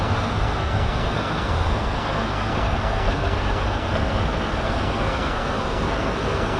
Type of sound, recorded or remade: remade